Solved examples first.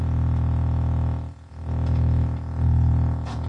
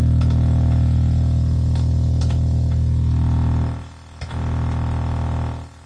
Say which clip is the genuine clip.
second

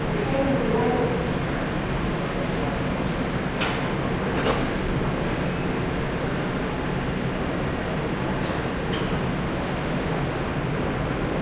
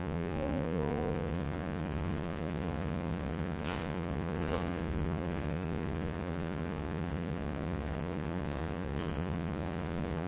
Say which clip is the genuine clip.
first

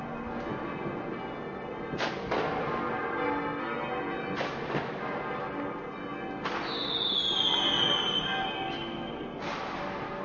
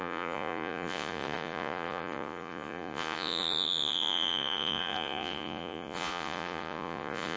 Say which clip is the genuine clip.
first